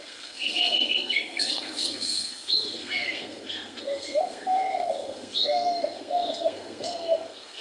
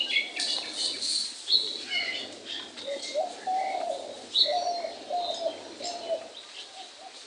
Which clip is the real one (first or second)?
second